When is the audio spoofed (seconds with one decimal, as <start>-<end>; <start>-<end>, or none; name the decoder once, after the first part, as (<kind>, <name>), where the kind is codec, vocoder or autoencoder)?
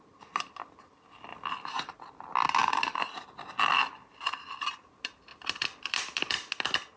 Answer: 5.3-6.3 (vocoder, BigVGAN v2)